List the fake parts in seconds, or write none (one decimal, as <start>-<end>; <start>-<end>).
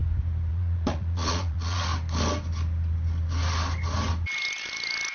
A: 0.5-1.9